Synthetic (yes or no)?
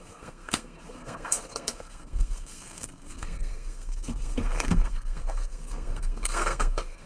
yes